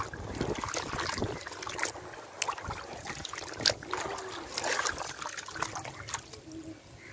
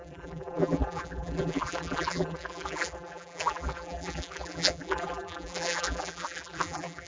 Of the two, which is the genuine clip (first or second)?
first